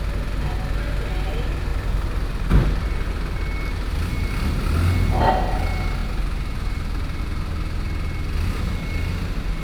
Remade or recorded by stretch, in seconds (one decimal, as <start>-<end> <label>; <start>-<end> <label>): 0.0-1.7 recorded; 1.7-2.5 remade; 2.5-4.1 recorded; 4.1-4.6 remade; 4.6-9.6 recorded